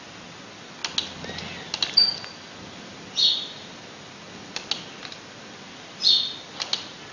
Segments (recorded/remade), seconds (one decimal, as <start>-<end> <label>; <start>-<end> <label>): 0.0-7.1 recorded